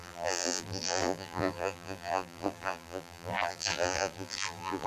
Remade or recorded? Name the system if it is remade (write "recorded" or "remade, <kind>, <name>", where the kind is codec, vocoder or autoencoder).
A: remade, vocoder, BigVGAN v2